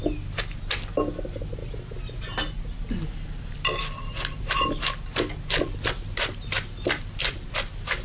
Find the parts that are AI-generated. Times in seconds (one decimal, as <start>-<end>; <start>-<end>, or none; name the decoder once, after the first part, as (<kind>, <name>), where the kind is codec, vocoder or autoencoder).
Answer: none